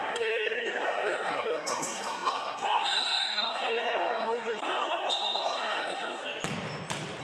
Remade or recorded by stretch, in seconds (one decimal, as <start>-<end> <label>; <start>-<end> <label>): 0.0-6.2 remade; 6.2-7.2 recorded